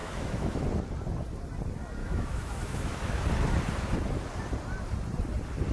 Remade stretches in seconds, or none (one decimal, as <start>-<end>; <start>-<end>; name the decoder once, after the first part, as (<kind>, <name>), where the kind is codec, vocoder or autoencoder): 0.0-0.6 (autoencoder, DAC-VAE); 2.0-3.2